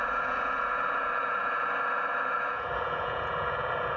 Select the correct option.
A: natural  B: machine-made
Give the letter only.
B